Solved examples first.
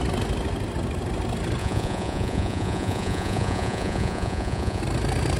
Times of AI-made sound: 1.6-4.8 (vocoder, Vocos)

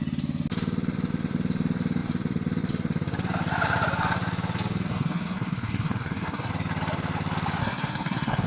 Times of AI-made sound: 4.9-6.5 (codec, SNAC); 7.6-8.5

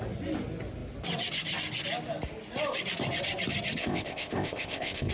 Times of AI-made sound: 3.8-5.1 (codec, ZipCodec)

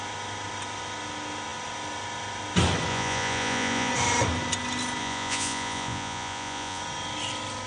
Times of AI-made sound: 2.9-3.9 (vocoder, Vocos); 5.0-6.8

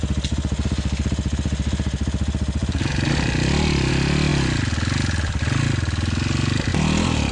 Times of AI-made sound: none

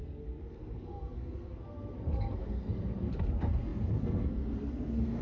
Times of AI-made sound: 0.0-5.2 (codec, SNAC)